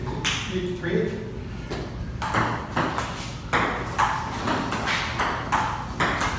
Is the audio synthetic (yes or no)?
no